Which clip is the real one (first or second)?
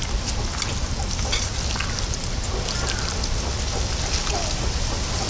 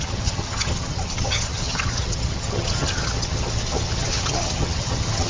first